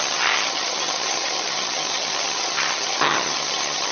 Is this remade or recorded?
remade